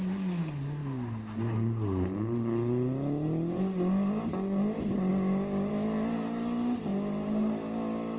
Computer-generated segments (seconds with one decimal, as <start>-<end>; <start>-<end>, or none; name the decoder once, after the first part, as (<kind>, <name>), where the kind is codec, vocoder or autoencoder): 5.1-5.7 (codec, DAC)